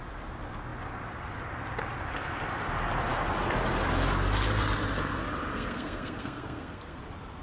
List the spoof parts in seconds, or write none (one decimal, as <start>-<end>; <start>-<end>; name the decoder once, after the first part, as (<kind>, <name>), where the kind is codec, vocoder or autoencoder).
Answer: 5.5-7.0 (codec, SNAC)